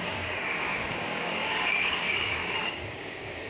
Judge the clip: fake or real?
fake